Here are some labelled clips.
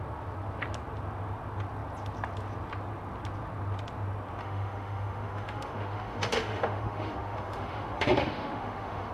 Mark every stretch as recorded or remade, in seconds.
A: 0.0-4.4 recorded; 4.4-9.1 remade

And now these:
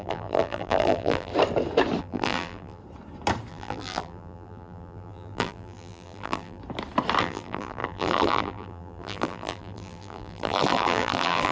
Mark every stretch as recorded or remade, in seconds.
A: 0.0-1.3 remade; 1.3-2.0 recorded; 2.0-2.8 remade; 2.8-3.5 recorded; 3.5-6.6 remade; 6.6-7.2 recorded; 7.2-11.5 remade

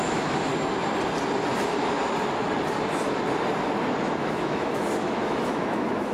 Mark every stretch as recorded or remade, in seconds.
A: 0.0-0.5 remade; 0.5-4.2 recorded; 4.2-6.1 remade

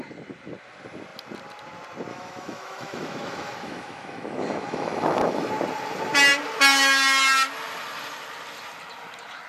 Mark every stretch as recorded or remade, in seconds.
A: 0.0-2.1 recorded; 2.1-5.5 remade; 5.5-9.5 recorded

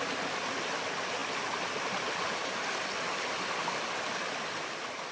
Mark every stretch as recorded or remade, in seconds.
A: 0.0-5.1 recorded

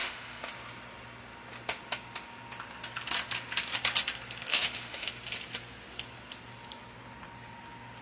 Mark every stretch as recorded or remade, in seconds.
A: 0.0-0.5 remade; 0.5-4.5 recorded; 4.5-5.1 remade; 5.1-8.0 recorded